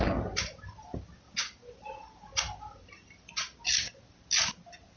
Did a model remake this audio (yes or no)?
no